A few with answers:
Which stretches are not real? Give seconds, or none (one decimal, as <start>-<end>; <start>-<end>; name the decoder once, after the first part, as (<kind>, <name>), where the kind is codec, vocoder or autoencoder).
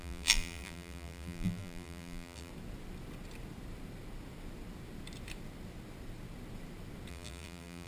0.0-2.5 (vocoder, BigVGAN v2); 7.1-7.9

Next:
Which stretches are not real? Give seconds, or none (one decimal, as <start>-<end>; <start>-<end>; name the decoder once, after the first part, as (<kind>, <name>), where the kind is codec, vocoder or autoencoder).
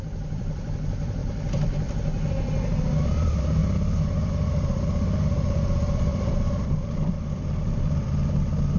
0.0-3.6 (vocoder, BigVGAN v2); 4.5-8.8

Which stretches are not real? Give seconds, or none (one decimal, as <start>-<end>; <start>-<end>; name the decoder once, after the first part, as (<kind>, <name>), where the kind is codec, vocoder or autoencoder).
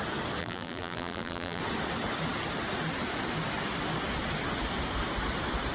0.4-1.6 (vocoder, BigVGAN v2)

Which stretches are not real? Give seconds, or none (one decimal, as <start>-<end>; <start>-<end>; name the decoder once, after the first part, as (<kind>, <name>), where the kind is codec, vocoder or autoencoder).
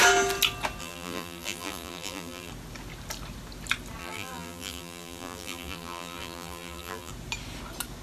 0.8-2.5 (vocoder, BigVGAN v2); 4.0-7.1